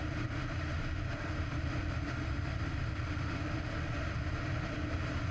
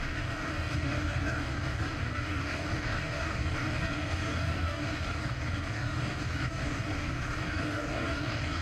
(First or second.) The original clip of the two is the first